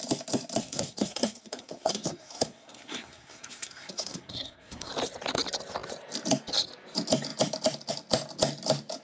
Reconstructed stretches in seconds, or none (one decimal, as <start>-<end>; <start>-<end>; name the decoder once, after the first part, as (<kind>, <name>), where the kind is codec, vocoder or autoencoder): 0.6-4.9 (codec, SNAC)